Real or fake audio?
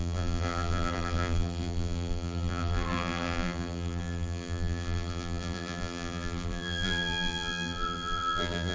fake